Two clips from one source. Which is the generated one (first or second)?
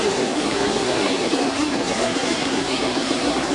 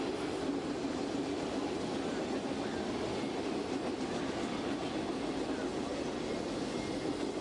first